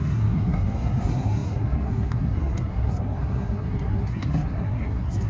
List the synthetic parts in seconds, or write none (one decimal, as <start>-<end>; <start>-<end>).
0.0-5.3